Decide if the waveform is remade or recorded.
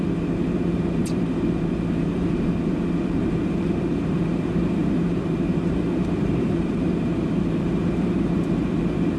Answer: remade